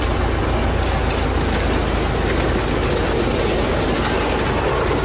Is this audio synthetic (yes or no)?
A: no